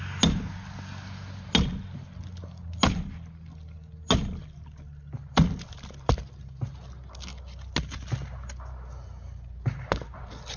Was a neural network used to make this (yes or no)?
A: no